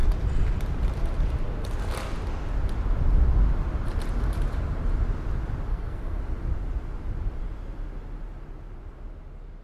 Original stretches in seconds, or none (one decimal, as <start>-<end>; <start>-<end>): 0.0-5.7; 6.2-9.6